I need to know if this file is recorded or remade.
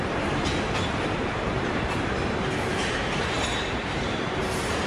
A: remade